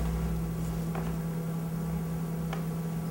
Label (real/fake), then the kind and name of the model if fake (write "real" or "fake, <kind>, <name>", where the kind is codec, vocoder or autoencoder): real